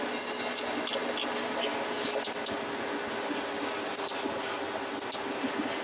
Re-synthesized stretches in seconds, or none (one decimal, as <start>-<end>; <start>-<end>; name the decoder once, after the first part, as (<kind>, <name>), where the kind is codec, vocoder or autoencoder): none